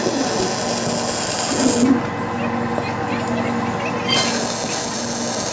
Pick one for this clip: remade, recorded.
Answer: recorded